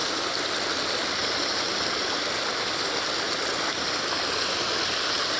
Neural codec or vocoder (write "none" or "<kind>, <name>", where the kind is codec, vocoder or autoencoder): none